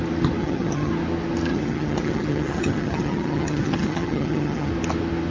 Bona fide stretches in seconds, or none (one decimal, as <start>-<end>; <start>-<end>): 0.0-0.4; 0.9-1.5; 4.7-5.3